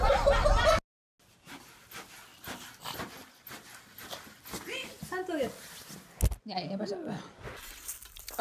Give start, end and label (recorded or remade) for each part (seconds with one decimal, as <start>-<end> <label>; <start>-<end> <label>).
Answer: 0.0-8.4 recorded